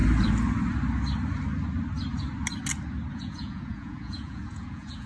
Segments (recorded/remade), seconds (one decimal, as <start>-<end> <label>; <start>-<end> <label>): 0.0-3.1 recorded; 3.1-5.1 remade